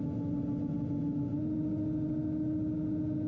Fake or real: real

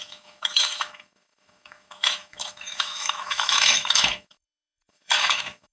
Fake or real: fake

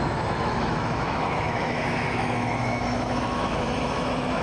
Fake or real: fake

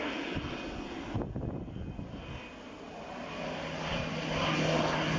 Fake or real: real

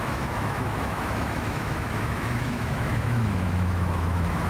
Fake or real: fake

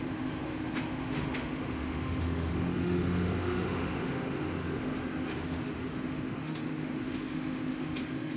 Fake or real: fake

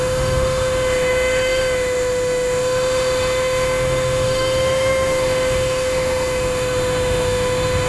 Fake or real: fake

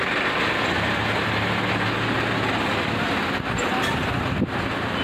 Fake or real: real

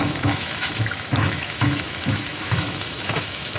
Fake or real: fake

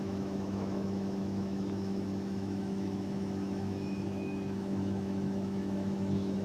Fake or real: fake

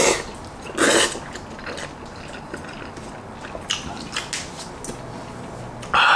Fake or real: real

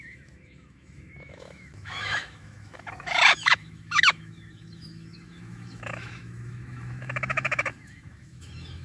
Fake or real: fake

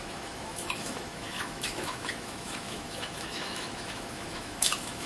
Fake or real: fake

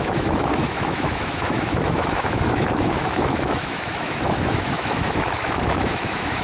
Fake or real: fake